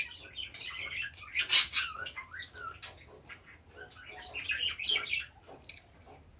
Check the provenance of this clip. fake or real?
real